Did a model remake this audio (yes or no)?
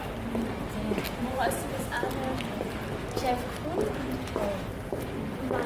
no